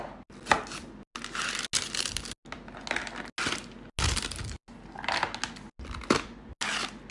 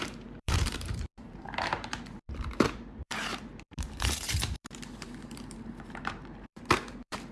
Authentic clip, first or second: first